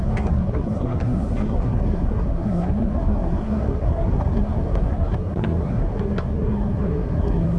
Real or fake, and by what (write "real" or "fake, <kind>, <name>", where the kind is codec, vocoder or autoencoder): fake, codec, SNAC